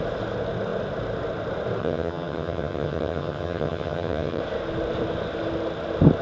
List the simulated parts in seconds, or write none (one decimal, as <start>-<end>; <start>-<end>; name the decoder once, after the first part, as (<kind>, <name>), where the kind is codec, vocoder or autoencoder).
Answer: 1.8-4.4 (vocoder, HiFi-GAN)